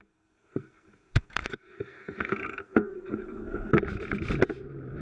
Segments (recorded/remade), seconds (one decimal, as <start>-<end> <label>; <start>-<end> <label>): 0.0-3.8 remade; 3.8-5.0 recorded